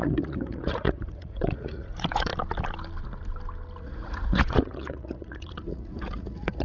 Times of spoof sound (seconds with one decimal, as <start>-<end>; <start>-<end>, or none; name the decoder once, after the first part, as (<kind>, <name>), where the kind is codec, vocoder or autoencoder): 0.0-2.3 (vocoder, Vocos); 3.8-6.6